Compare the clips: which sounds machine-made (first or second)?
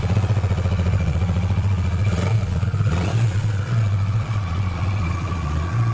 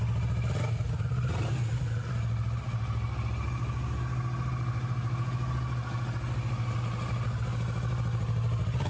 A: first